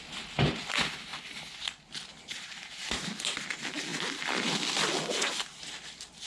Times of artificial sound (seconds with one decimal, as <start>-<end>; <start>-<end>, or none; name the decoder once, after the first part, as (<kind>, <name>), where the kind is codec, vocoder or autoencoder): 2.8-3.3 (vocoder, BigVGAN v2)